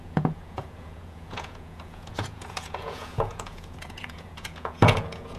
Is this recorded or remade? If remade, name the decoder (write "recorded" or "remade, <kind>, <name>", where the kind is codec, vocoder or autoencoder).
remade, vocoder, Vocos